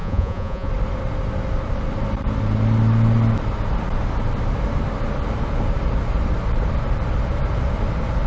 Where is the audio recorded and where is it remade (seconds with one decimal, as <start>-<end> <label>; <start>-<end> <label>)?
0.0-0.7 remade; 0.7-8.3 recorded

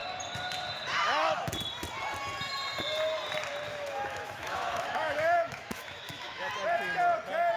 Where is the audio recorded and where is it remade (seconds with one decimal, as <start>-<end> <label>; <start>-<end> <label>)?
0.0-3.7 recorded; 3.7-6.5 remade; 6.5-7.6 recorded

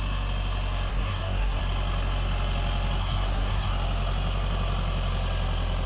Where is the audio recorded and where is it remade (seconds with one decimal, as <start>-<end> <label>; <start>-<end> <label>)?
0.0-0.9 recorded; 0.9-1.6 remade; 1.6-3.0 recorded; 3.0-3.7 remade; 3.7-5.9 recorded

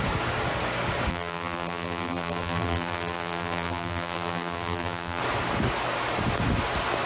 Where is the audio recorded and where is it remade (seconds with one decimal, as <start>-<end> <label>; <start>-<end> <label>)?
0.0-1.1 recorded; 1.1-5.2 remade; 5.2-7.1 recorded

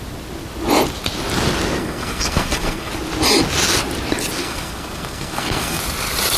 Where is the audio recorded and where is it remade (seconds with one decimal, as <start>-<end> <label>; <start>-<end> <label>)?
0.0-1.8 recorded; 1.8-2.9 remade; 2.9-4.4 recorded; 4.4-5.8 remade; 5.8-6.4 recorded